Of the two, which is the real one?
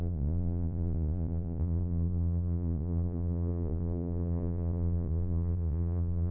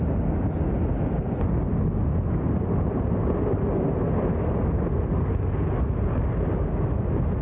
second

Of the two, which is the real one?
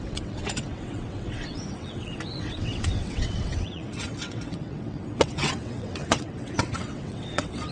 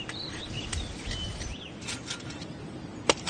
second